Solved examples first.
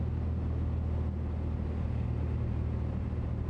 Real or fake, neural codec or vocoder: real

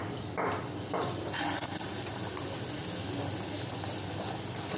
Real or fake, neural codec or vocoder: real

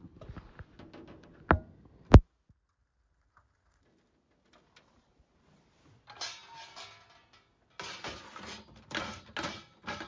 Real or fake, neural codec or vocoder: real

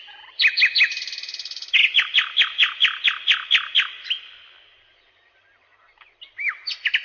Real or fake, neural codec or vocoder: real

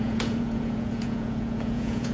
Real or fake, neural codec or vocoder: fake, vocoder, Vocos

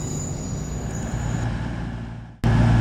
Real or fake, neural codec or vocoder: real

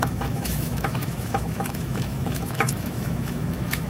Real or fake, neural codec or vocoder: fake, autoencoder, DAC-VAE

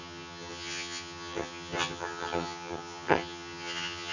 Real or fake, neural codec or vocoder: fake, vocoder, HiFi-GAN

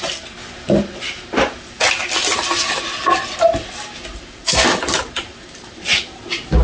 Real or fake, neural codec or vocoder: real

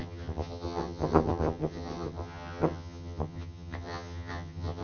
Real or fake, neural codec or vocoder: fake, vocoder, HiFi-GAN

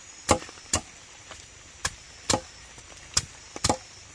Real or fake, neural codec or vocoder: fake, vocoder, BigVGAN v2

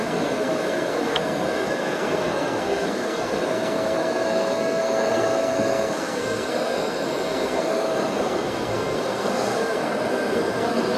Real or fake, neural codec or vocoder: fake, codec, SNAC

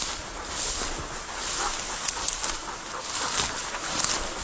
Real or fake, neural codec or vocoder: real